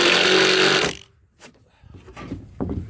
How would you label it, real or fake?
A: real